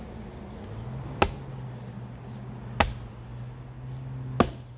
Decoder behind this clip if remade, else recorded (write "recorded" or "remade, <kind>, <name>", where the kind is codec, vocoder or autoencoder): recorded